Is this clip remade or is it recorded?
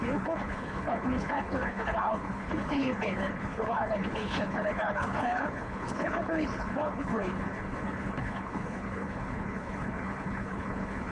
remade